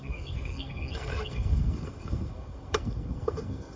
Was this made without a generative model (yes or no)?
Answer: no